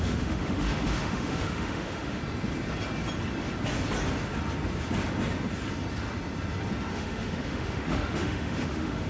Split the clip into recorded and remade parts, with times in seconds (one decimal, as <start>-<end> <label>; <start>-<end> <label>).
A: 0.0-2.2 remade; 2.2-6.9 recorded; 6.9-9.1 remade